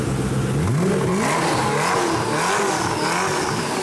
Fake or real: real